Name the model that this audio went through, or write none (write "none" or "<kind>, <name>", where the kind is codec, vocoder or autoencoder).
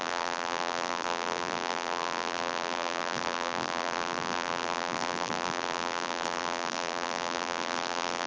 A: vocoder, BigVGAN v2